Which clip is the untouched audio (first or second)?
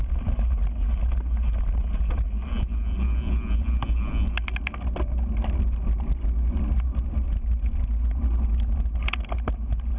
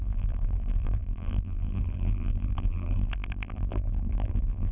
first